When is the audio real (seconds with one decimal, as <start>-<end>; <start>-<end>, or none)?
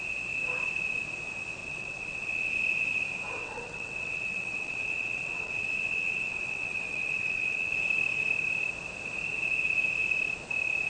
0.0-1.6; 2.5-3.4; 7.7-10.9